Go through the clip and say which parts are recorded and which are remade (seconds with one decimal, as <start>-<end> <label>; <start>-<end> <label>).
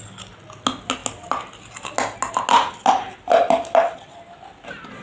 0.0-5.0 recorded